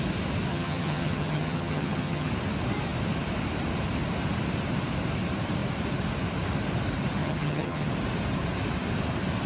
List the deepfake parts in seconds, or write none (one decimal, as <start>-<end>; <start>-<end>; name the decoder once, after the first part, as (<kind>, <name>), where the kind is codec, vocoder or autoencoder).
0.5-2.3 (vocoder, HiFi-GAN); 7.2-7.9